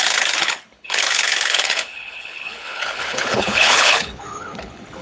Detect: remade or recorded remade